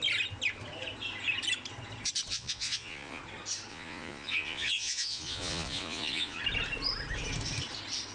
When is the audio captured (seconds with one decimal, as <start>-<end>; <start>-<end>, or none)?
0.0-2.3; 3.2-3.7; 6.4-8.1